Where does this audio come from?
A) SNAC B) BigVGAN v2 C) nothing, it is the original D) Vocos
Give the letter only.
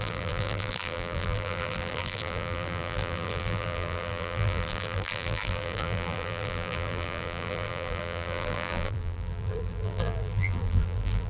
B